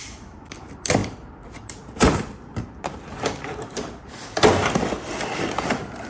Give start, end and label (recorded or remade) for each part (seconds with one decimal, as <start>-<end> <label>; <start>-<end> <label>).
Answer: 0.0-6.1 remade

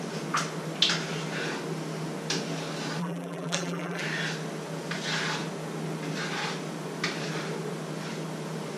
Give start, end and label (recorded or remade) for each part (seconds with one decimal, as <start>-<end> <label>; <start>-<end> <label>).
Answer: 0.0-3.0 recorded; 3.0-4.0 remade; 4.0-8.8 recorded